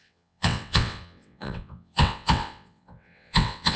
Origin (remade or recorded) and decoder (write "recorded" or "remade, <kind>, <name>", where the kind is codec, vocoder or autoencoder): remade, vocoder, WaveNeXt